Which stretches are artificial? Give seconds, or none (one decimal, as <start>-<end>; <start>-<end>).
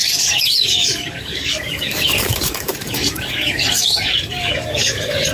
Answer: 0.0-5.3